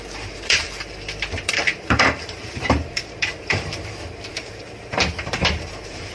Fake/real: fake